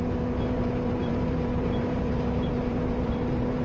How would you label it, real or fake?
fake